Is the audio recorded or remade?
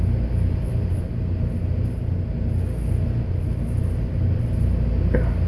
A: recorded